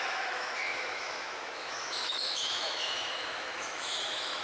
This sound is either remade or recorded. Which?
remade